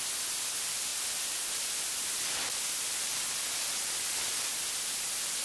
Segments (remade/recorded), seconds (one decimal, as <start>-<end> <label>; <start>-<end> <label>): 0.0-5.4 recorded